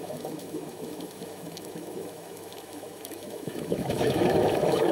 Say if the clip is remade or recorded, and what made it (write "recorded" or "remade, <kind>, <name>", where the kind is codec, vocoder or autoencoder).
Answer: remade, autoencoder, DAC-VAE